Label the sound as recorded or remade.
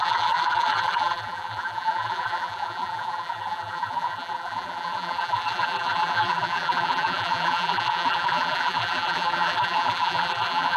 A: remade